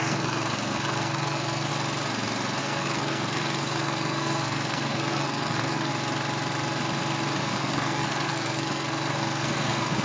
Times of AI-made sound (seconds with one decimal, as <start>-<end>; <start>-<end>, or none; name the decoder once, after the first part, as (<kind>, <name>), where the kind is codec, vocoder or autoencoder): 0.0-1.7 (codec, SNAC); 2.6-5.9; 7.4-10.0